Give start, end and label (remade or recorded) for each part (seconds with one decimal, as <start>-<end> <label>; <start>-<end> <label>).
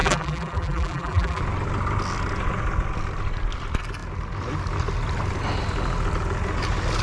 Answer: 0.0-1.4 remade; 1.4-7.0 recorded